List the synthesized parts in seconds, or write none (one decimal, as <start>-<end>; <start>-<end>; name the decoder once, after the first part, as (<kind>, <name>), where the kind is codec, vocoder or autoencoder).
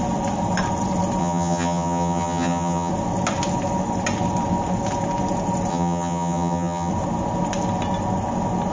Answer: 1.2-2.9 (vocoder, HiFi-GAN); 5.7-6.9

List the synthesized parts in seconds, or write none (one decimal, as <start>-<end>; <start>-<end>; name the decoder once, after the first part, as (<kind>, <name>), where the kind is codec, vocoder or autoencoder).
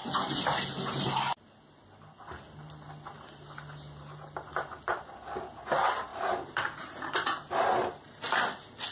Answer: none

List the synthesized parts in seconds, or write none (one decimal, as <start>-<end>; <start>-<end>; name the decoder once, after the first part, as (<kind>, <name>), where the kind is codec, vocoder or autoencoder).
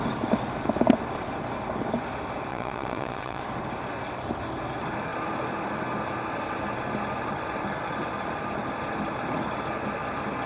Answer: 2.5-3.4 (vocoder, WaveNeXt)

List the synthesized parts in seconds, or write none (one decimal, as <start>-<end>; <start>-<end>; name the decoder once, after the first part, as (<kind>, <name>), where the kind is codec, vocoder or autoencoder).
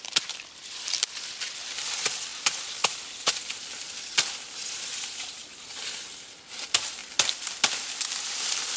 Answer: 0.0-2.3 (vocoder, BigVGAN v2); 5.3-7.0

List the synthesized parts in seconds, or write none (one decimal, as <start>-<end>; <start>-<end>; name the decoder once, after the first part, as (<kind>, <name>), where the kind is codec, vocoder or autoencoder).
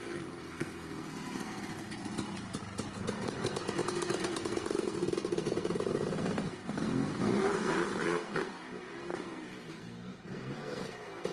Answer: 0.0-2.0 (codec, SNAC); 2.9-11.3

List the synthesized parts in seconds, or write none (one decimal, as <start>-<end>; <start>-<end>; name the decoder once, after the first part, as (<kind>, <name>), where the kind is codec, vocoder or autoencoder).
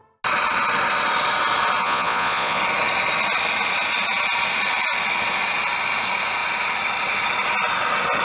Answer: 1.8-2.6 (vocoder, Vocos)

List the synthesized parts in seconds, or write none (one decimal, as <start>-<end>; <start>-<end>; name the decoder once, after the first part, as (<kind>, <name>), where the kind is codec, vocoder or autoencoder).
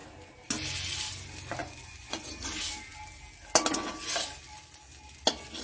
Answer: 1.6-2.3 (vocoder, Vocos)